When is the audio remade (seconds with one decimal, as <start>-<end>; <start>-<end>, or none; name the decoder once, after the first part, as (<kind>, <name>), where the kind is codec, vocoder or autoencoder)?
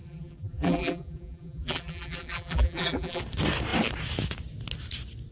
0.0-3.2 (vocoder, BigVGAN v2)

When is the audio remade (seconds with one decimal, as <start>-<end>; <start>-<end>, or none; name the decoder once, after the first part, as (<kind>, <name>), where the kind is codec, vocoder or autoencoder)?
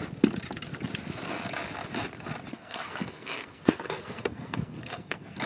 2.5-5.5 (codec, SNAC)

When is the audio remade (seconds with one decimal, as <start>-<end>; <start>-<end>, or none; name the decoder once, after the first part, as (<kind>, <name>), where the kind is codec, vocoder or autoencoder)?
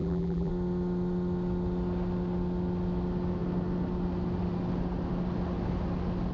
0.0-0.5 (vocoder, BigVGAN v2)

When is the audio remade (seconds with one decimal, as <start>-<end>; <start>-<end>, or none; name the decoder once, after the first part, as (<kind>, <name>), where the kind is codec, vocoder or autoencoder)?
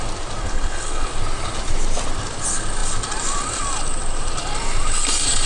0.4-1.1 (codec, HILCodec)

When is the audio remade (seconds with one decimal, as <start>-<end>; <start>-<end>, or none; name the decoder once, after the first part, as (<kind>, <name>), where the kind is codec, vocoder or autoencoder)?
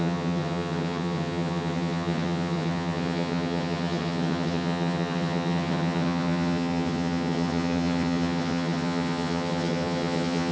0.0-10.5 (vocoder, HiFi-GAN)